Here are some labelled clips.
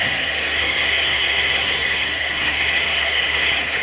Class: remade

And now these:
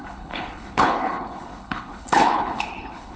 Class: remade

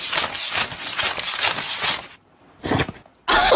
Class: recorded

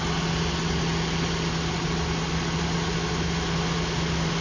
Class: recorded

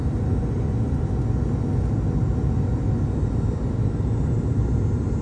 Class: recorded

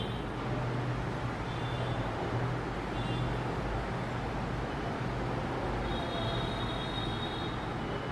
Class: recorded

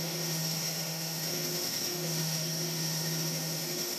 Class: remade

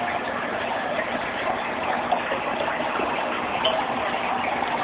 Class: recorded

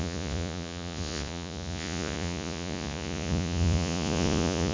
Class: remade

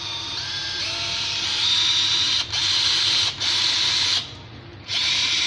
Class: remade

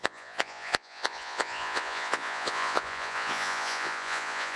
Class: remade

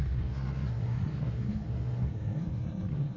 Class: remade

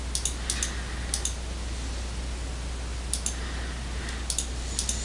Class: recorded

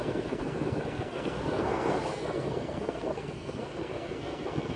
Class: remade